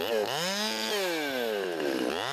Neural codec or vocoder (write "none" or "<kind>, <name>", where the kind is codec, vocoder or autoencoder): none